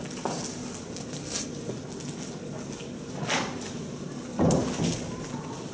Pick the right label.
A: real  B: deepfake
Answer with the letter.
A